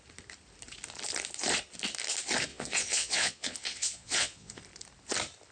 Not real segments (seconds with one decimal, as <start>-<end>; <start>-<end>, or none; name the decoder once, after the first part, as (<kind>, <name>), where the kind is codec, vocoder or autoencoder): 2.5-4.6 (vocoder, Vocos)